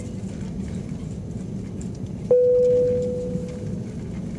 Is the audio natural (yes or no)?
yes